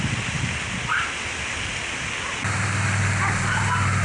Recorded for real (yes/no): yes